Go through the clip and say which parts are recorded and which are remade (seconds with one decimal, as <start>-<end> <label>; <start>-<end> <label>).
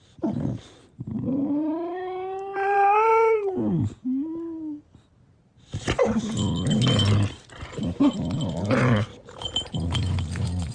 0.0-3.1 remade; 3.1-7.6 recorded; 7.6-10.7 remade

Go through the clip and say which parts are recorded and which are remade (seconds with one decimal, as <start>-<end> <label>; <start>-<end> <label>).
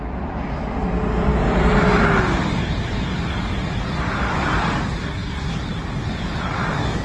0.0-5.0 recorded; 5.0-5.5 remade; 5.5-7.0 recorded